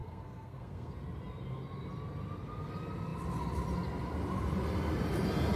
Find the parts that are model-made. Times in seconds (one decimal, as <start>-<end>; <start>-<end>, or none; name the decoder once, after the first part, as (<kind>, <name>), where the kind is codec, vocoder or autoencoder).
0.0-0.9 (codec, SNAC)